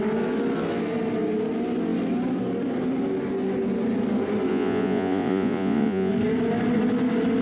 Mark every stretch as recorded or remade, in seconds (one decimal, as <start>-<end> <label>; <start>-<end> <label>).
0.0-4.5 recorded; 4.5-6.1 remade; 6.1-7.4 recorded